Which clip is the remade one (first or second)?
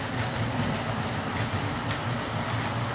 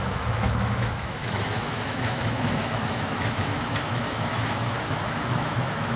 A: second